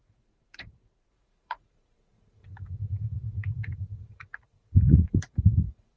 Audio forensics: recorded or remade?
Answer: remade